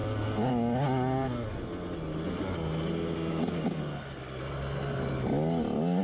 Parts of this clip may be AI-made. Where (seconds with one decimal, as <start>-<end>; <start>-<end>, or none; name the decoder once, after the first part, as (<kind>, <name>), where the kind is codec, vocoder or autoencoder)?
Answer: none

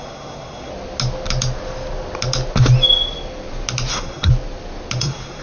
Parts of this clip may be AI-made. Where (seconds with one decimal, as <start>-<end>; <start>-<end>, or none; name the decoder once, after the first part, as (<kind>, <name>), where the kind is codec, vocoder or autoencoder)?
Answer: 0.0-0.7 (codec, SNAC); 3.9-4.3; 5.0-5.4

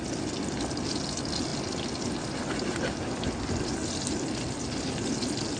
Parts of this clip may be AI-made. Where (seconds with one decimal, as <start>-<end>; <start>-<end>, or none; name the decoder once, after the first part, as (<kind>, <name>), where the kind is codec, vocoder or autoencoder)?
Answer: none

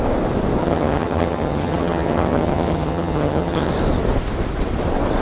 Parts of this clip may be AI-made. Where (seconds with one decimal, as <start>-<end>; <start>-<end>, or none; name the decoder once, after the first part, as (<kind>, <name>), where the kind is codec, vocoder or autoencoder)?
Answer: 0.6-3.7 (vocoder, HiFi-GAN)

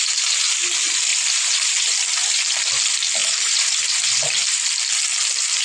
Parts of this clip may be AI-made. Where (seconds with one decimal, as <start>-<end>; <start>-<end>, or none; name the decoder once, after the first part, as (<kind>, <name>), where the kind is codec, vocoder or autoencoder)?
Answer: 1.1-2.8 (vocoder, BigVGAN v2); 3.2-4.6

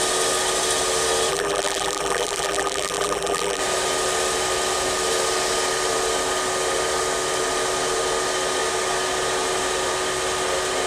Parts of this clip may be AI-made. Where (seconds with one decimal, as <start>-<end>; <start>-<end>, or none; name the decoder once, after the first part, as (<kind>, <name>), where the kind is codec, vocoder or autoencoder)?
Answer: 1.3-3.6 (vocoder, BigVGAN v2)

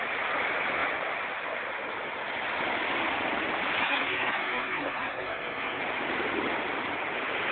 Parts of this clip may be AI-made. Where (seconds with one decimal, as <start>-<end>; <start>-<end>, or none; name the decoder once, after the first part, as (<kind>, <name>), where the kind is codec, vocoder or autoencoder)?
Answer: 3.8-5.8 (codec, SNAC)

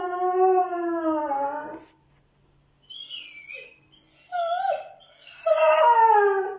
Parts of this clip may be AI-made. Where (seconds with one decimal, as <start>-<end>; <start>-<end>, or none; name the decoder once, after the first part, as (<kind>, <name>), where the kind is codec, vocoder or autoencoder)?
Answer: none